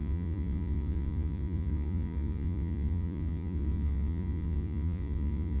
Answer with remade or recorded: remade